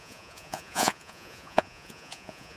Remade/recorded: remade